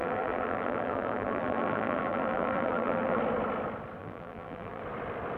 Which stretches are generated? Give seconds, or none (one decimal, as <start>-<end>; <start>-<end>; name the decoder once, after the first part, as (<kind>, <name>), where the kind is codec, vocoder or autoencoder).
0.0-3.2 (vocoder, BigVGAN v2); 4.0-4.8